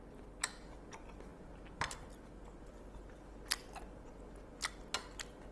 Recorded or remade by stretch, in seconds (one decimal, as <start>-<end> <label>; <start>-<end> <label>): 0.0-5.5 recorded